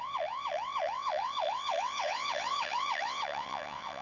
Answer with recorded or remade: remade